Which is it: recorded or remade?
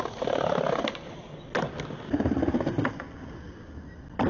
recorded